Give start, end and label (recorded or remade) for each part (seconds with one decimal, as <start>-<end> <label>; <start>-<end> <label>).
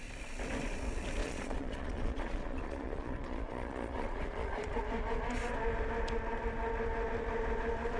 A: 0.0-1.2 recorded; 1.2-4.8 remade; 4.8-8.0 recorded